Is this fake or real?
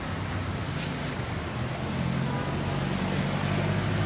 real